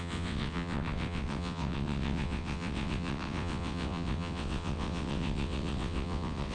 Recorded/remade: remade